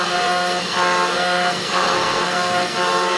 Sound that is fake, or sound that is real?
fake